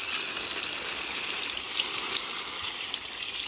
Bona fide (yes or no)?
yes